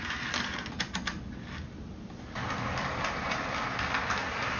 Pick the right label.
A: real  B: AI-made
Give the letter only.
A